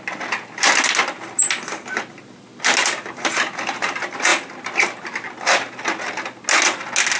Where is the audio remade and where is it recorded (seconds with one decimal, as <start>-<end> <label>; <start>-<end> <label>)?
0.0-7.2 recorded